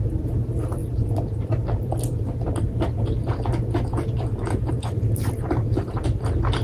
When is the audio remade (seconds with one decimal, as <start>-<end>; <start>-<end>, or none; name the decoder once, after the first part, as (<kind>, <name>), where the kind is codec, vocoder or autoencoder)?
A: none